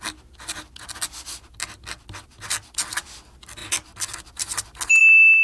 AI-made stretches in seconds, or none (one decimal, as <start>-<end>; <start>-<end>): none